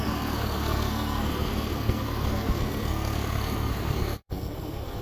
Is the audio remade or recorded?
remade